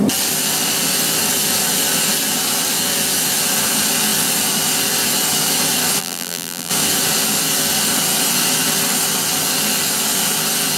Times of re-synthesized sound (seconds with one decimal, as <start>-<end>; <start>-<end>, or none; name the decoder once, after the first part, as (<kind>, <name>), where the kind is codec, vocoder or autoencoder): 6.0-6.7 (vocoder, BigVGAN v2)